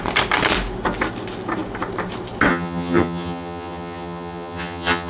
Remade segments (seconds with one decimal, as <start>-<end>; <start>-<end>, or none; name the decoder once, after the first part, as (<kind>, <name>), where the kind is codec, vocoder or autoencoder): 2.5-5.1 (vocoder, HiFi-GAN)